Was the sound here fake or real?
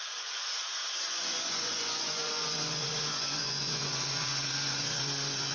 fake